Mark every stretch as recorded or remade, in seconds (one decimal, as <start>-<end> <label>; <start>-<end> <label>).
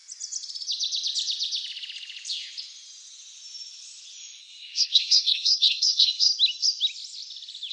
0.0-4.4 recorded; 4.4-6.3 remade; 6.3-7.7 recorded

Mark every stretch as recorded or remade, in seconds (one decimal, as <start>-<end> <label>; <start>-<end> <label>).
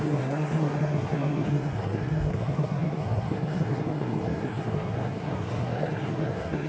0.0-6.7 remade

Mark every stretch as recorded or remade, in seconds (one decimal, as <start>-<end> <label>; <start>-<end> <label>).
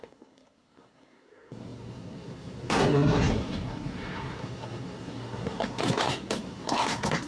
0.0-7.3 remade